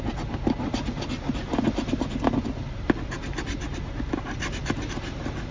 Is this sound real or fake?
real